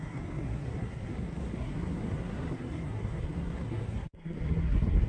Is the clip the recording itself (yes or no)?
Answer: no